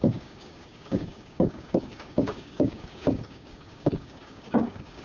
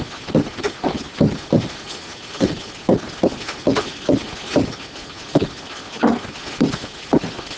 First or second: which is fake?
first